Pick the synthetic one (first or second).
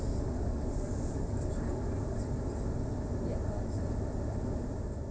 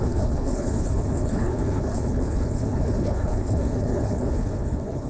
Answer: second